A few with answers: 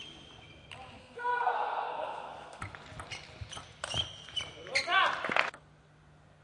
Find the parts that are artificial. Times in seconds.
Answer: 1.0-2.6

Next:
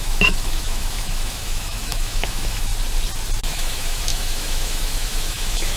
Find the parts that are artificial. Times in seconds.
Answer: 0.0-2.7; 3.4-5.8